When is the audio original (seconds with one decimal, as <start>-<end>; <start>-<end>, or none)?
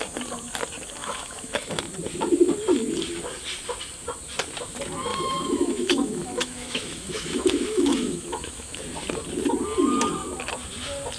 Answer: 0.0-1.0; 1.8-5.1; 8.8-11.2